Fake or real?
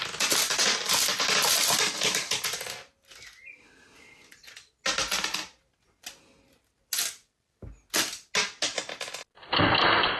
real